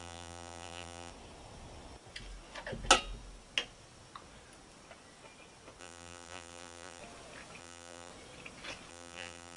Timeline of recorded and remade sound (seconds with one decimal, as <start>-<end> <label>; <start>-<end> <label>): 0.0-1.1 remade; 1.1-5.8 recorded; 5.8-7.0 remade; 7.0-7.6 recorded; 7.6-8.1 remade; 8.1-8.9 recorded; 8.9-9.6 remade